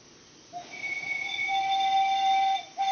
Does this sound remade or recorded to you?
recorded